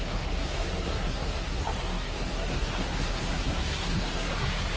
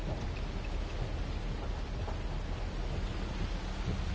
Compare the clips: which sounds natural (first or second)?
second